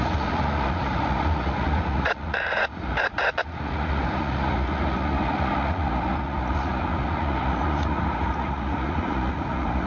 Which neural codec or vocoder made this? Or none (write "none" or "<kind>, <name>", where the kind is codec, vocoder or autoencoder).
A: vocoder, Vocos